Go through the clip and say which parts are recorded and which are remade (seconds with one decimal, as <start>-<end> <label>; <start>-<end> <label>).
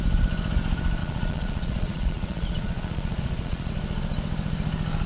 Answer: 0.0-1.0 recorded; 1.0-3.7 remade; 3.7-5.1 recorded